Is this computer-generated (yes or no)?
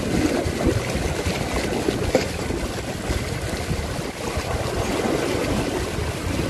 no